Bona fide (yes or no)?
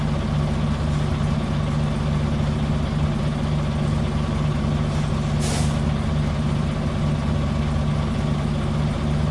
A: yes